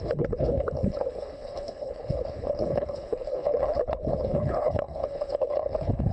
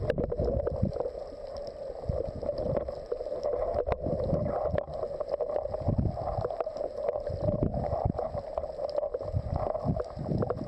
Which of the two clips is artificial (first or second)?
first